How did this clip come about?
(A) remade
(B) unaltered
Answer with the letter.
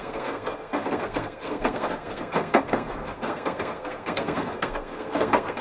A